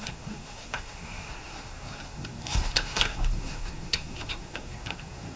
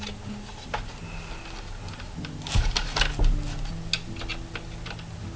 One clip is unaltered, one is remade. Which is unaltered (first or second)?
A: second